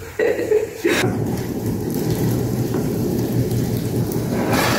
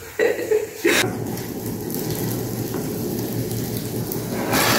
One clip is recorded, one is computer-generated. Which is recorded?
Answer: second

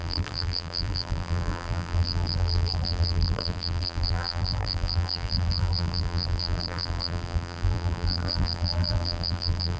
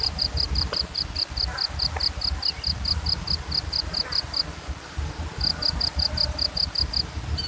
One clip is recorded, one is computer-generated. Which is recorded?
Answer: second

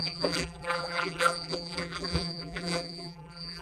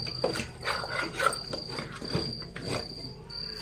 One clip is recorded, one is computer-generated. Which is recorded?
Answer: second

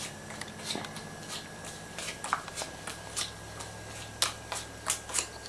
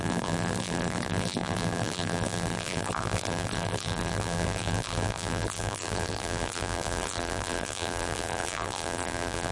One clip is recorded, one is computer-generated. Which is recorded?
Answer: first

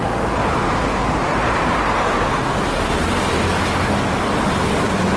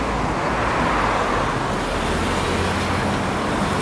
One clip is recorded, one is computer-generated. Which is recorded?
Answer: second